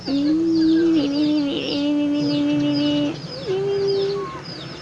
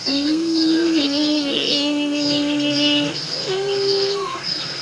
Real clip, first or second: first